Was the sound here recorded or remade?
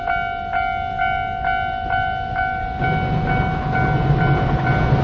recorded